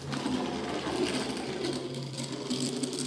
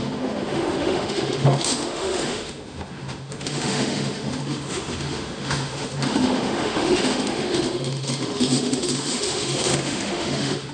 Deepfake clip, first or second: second